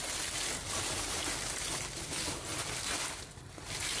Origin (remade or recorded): recorded